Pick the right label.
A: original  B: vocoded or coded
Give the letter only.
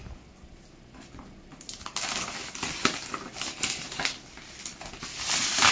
A